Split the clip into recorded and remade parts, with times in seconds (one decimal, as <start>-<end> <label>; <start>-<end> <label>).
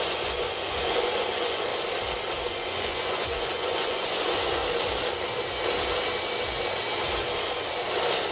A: 0.0-1.7 remade; 1.7-2.4 recorded; 2.4-4.6 remade; 4.6-8.3 recorded